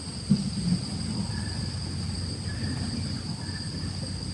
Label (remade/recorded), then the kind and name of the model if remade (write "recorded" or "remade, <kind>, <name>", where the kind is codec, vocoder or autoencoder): recorded